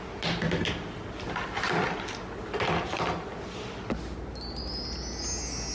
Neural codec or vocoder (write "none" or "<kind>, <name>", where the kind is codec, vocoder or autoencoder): none